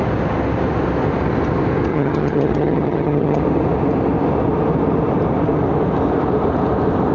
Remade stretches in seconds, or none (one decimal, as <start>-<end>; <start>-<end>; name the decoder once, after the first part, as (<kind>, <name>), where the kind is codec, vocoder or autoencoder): 1.9-3.4 (vocoder, HiFi-GAN)